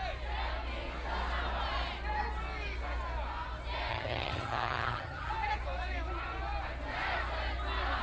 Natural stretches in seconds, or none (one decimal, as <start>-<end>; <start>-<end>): 0.0-3.9; 5.3-8.0